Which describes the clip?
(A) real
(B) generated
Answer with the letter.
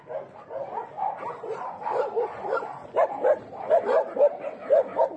A